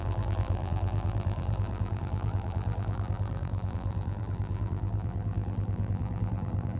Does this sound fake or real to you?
fake